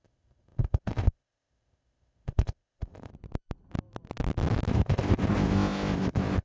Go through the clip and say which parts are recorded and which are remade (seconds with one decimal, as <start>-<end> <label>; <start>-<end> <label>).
0.0-3.1 remade; 3.1-4.7 recorded; 4.7-6.4 remade